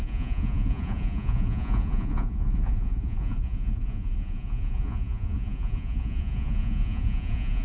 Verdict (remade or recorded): remade